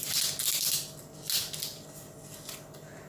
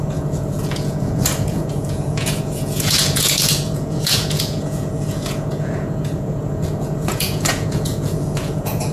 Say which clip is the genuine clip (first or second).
first